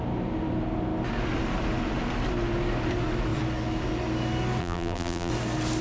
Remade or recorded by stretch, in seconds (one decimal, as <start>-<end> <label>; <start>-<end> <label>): 0.0-4.6 recorded; 4.6-5.3 remade; 5.3-5.8 recorded